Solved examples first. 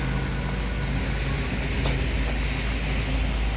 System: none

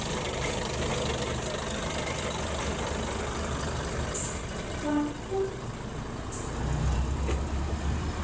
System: none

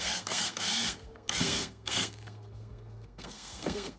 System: codec, SNAC